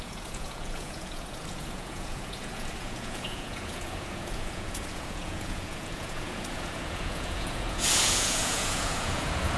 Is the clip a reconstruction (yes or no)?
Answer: yes